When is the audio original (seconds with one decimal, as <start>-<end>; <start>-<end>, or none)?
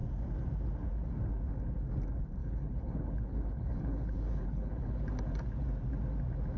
0.0-2.4; 5.0-6.6